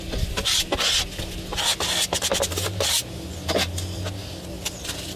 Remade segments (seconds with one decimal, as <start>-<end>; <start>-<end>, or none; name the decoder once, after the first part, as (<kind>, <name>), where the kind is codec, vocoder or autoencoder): none

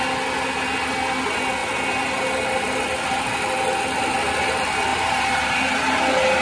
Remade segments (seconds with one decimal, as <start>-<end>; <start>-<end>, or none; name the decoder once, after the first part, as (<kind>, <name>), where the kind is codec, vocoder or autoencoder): 1.6-2.2 (vocoder, BigVGAN v2); 4.9-6.0

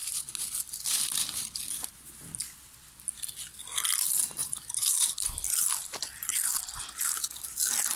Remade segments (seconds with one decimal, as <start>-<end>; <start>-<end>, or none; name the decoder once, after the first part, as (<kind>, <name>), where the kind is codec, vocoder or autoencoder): 4.4-5.1 (vocoder, BigVGAN v2)

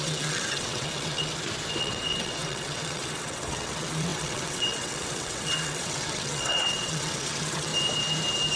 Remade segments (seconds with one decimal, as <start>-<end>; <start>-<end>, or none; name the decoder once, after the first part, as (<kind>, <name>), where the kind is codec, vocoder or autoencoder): 0.0-1.3 (vocoder, WaveNeXt); 1.8-7.7

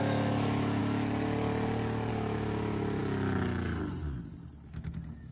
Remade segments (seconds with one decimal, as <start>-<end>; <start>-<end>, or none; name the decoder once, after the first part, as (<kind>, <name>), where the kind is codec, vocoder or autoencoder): 0.0-0.8 (autoencoder, DAC-VAE); 2.1-3.0; 4.7-5.3

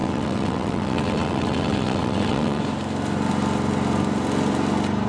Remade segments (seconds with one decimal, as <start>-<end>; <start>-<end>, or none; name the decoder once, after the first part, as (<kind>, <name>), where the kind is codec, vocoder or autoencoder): 0.0-2.6 (vocoder, WaveNeXt)